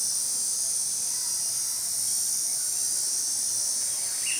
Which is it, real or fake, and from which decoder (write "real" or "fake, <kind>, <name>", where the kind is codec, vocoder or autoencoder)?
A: real